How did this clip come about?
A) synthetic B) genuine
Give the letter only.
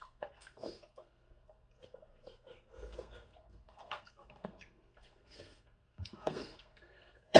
A